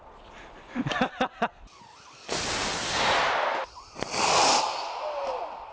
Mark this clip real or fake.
real